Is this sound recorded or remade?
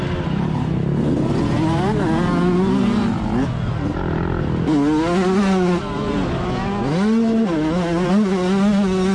recorded